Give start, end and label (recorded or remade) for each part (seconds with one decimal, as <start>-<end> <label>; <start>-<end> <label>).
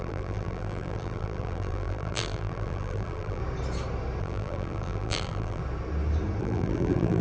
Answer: 0.0-3.4 remade; 3.4-4.2 recorded; 4.2-5.6 remade; 5.6-6.4 recorded; 6.4-7.2 remade